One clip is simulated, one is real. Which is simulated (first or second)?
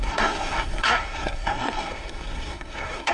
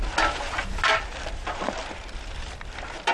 first